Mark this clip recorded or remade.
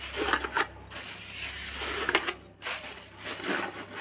recorded